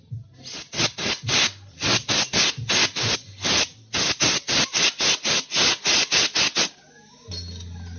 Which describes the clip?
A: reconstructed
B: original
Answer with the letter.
B